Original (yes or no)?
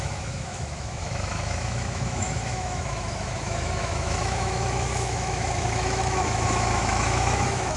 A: no